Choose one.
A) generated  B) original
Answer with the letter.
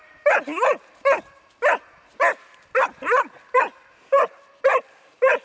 B